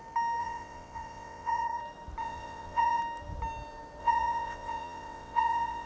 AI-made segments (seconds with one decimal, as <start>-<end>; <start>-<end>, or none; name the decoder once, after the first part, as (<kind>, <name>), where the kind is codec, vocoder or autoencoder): 0.4-1.8 (vocoder, WaveNeXt); 2.2-3.0; 4.0-5.9